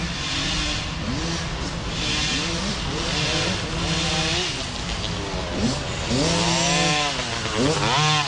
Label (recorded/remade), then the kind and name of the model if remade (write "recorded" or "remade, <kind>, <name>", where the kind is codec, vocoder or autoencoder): recorded